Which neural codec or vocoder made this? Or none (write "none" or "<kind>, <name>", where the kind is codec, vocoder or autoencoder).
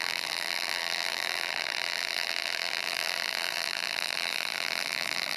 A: vocoder, BigVGAN v2